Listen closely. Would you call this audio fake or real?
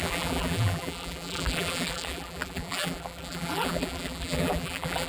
fake